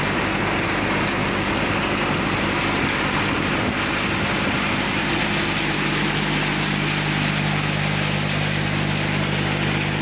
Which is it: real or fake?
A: real